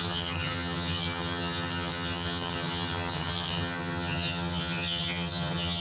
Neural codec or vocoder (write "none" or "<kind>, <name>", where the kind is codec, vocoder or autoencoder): vocoder, HiFi-GAN